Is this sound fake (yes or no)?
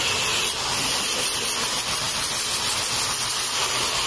no